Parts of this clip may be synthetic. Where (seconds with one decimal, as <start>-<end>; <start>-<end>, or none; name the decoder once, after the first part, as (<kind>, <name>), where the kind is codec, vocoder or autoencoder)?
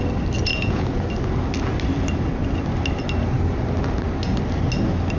0.5-1.0 (vocoder, Vocos)